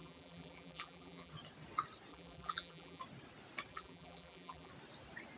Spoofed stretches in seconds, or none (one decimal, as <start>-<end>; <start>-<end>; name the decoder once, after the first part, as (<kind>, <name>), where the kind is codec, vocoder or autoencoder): 0.0-1.3 (vocoder, BigVGAN v2); 2.1-3.0; 3.7-4.7